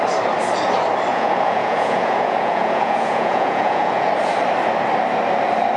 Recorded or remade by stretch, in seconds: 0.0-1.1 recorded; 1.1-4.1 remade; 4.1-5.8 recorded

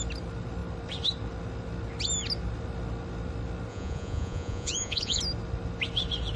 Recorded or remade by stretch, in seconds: 0.0-3.7 recorded; 3.7-5.2 remade; 5.2-6.4 recorded